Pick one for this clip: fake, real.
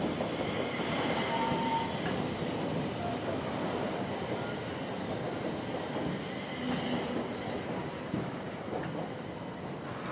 real